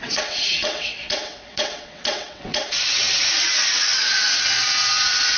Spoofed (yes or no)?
yes